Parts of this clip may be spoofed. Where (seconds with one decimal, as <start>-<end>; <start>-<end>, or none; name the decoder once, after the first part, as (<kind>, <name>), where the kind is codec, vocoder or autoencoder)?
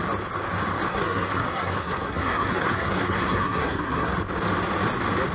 0.9-4.1 (codec, SNAC)